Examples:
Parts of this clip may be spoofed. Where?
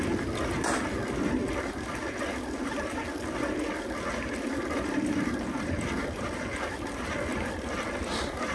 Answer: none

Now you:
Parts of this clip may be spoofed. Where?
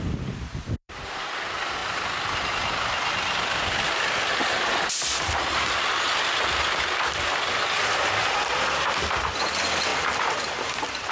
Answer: 0.0-11.1 (vocoder, BigVGAN v2)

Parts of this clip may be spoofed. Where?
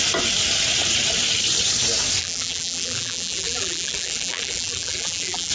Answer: 2.2-5.5 (vocoder, BigVGAN v2)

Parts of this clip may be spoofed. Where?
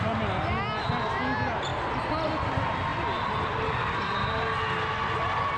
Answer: 1.7-2.3 (vocoder, BigVGAN v2)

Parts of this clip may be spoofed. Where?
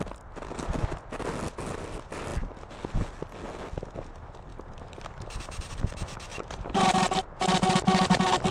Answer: 4.5-5.7 (vocoder, BigVGAN v2); 6.3-7.2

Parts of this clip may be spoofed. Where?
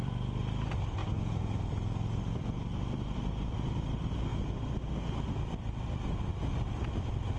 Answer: 0.0-1.0 (vocoder, BigVGAN v2); 1.7-4.3; 5.3-6.3; 7.0-7.4